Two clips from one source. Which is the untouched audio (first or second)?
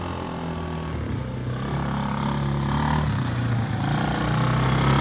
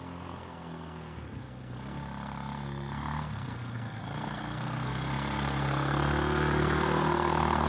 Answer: first